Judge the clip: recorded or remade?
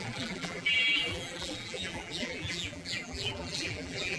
remade